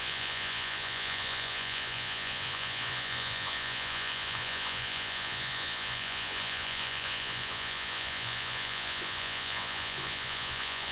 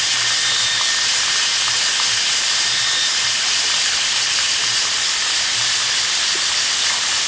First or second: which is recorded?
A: second